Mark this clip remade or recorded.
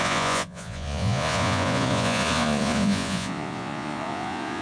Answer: remade